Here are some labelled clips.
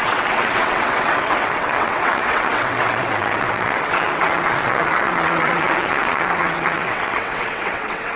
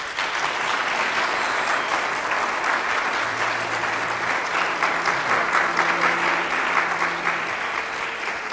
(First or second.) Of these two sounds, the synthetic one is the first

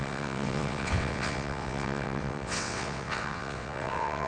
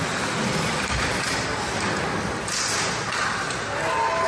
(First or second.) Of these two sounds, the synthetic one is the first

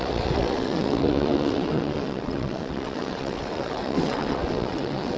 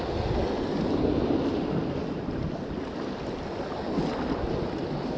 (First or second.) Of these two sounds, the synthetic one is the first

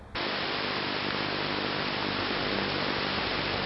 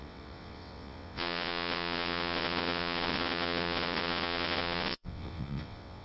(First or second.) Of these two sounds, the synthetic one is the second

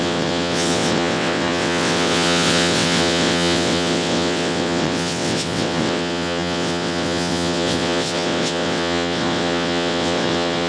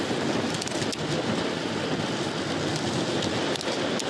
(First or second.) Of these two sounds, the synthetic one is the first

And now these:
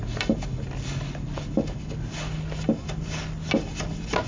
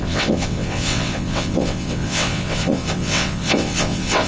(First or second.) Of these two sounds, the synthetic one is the second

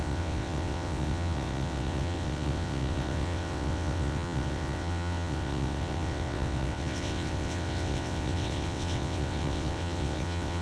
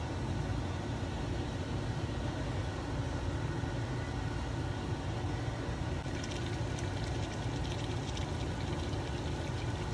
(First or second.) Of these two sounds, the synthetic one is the first